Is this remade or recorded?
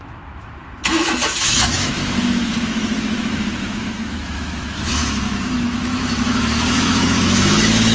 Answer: remade